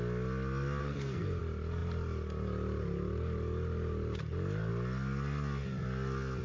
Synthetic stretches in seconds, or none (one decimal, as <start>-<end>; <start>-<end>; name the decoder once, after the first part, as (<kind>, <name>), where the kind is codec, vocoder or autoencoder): 0.8-1.4 (codec, SNAC)